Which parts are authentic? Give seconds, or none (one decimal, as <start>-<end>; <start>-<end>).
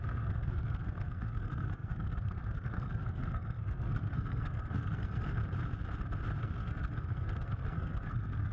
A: 5.4-6.4